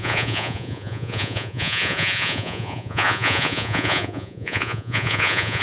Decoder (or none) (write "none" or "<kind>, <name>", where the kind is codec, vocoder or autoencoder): vocoder, Vocos